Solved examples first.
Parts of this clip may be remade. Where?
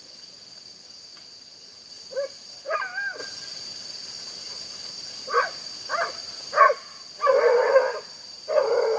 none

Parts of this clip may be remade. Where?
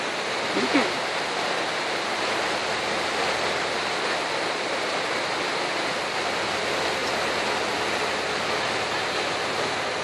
none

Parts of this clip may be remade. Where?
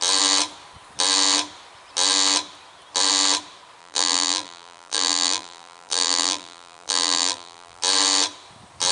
3.8-7.8 (vocoder, BigVGAN v2)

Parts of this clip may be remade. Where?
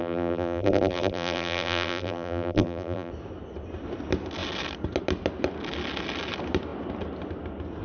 0.0-3.1 (vocoder, BigVGAN v2)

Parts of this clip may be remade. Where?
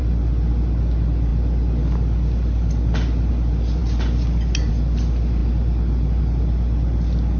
none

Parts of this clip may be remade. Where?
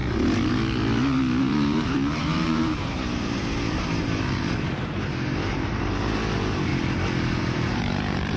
1.4-6.7 (vocoder, BigVGAN v2); 7.4-8.4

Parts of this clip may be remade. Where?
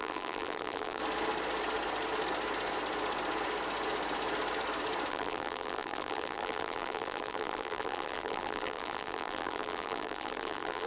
0.0-1.0 (vocoder, BigVGAN v2); 5.1-10.9